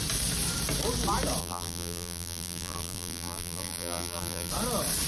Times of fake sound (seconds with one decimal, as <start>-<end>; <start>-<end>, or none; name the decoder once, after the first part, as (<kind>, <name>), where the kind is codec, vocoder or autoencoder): 1.4-4.5 (vocoder, BigVGAN v2)